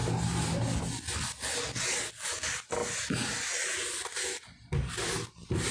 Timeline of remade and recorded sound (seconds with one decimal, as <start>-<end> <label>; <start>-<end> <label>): 0.0-5.7 recorded